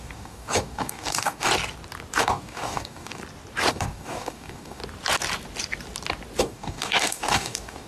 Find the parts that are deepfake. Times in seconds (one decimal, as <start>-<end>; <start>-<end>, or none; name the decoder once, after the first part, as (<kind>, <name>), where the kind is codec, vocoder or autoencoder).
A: 0.0-1.5 (codec, DAC); 2.2-3.2; 3.7-4.8; 6.4-7.9